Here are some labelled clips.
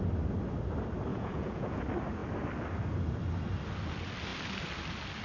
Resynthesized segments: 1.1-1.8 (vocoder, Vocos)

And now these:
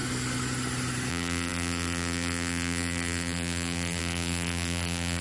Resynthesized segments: 1.1-5.2 (vocoder, BigVGAN v2)